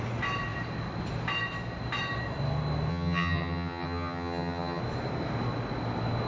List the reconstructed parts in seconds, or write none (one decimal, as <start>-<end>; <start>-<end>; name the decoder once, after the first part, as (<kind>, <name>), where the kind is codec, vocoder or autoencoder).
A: 2.9-4.8 (vocoder, HiFi-GAN)